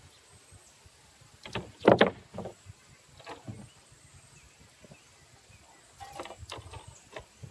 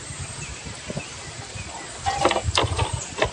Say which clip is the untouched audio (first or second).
first